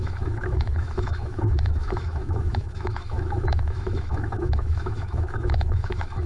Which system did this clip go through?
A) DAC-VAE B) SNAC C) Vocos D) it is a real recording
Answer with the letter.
A